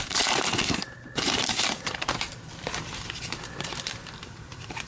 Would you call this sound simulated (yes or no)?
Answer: yes